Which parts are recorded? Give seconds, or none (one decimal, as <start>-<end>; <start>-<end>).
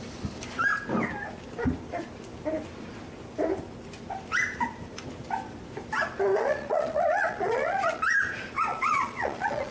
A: 0.0-6.3; 8.0-8.7